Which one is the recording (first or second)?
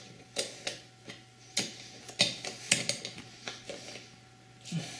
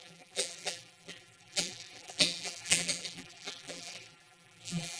first